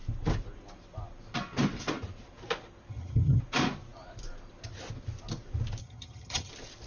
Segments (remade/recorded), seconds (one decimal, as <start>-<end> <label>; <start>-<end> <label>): 0.0-2.9 recorded; 2.9-3.4 remade; 3.4-5.8 recorded; 5.8-6.5 remade; 6.5-6.9 recorded